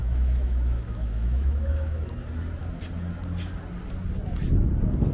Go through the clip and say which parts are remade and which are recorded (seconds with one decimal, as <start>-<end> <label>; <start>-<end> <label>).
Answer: 0.0-2.1 remade; 2.1-5.1 recorded